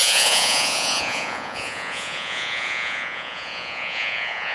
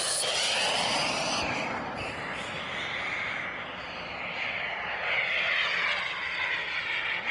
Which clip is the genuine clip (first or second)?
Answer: second